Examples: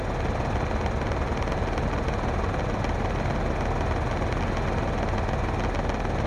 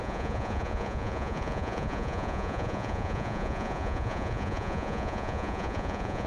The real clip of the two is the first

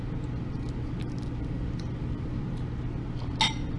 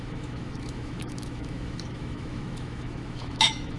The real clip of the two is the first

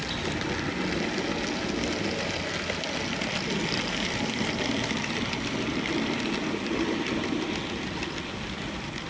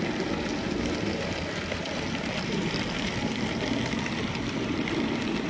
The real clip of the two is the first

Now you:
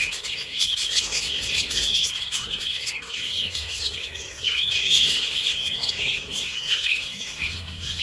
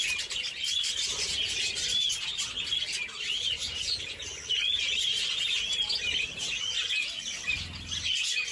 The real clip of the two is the second